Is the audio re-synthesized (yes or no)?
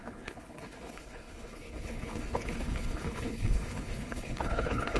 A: yes